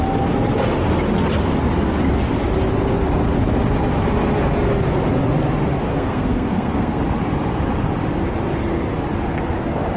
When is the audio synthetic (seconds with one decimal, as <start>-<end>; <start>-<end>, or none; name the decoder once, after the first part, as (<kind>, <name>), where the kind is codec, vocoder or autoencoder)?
5.9-7.0 (codec, SNAC)